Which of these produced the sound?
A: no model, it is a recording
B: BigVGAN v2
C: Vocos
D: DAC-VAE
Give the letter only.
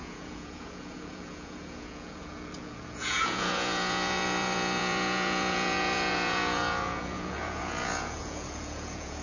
C